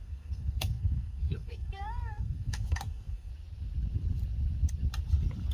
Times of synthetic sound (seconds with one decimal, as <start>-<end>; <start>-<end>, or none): 0.0-3.3